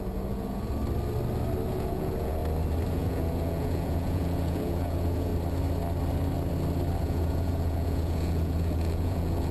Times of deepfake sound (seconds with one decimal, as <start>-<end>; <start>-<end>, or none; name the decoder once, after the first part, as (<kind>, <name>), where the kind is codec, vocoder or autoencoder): 0.0-0.8 (vocoder, Vocos); 1.7-2.4; 2.9-5.3; 7.0-9.5

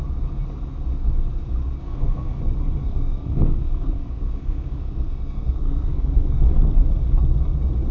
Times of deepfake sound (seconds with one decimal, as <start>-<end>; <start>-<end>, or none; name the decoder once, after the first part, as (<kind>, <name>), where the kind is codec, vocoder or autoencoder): 1.8-2.4 (codec, SNAC); 2.8-6.4

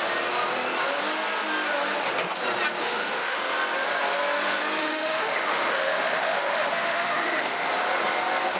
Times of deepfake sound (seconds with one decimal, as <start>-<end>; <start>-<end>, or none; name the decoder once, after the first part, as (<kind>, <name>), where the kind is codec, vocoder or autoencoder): 2.8-3.4 (autoencoder, DAC-VAE); 4.8-7.7